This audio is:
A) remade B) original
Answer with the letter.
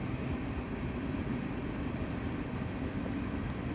B